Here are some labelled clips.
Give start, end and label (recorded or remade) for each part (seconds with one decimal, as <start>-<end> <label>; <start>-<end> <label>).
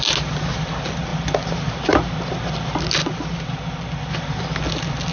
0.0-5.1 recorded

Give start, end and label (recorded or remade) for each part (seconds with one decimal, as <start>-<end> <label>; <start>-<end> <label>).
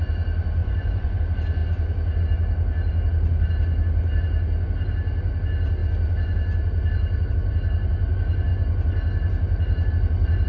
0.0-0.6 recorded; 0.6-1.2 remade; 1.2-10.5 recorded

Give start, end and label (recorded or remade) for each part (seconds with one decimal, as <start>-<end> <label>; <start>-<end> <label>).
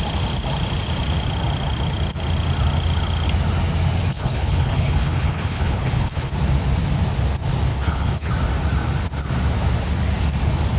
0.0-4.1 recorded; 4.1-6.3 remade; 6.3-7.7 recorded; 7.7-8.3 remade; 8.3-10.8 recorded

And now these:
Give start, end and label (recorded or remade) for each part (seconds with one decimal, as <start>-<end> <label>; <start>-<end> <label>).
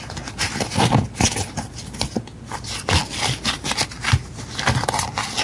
0.0-5.4 recorded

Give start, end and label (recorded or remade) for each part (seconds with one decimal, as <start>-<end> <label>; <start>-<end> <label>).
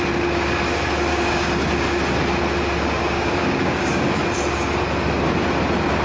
0.0-1.1 recorded; 1.1-1.7 remade; 1.7-3.0 recorded; 3.0-4.1 remade; 4.1-6.0 recorded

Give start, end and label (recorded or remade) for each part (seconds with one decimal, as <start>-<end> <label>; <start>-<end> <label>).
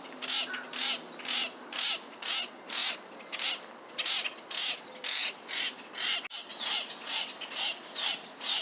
0.0-8.6 recorded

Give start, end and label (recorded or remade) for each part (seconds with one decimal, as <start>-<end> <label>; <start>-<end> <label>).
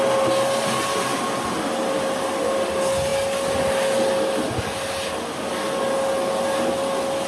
0.0-7.3 recorded